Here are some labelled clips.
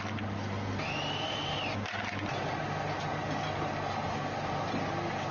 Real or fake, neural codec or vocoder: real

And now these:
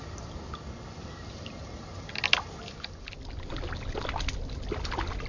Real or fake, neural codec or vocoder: real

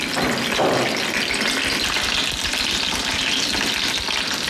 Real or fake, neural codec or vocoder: real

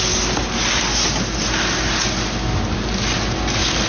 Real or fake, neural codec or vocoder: real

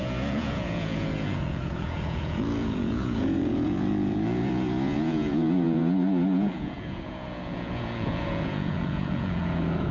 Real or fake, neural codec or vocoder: fake, vocoder, Vocos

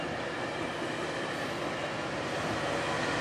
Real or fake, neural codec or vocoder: real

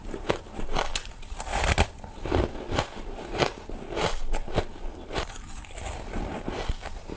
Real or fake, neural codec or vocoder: real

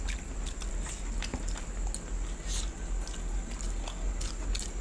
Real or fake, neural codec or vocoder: real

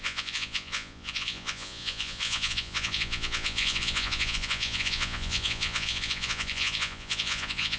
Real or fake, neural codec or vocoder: fake, vocoder, Vocos